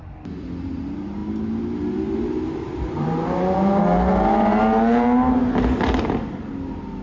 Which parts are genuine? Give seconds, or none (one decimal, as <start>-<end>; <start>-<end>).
0.0-2.7; 3.8-7.0